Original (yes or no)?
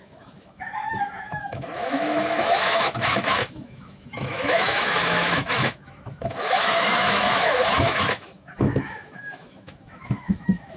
no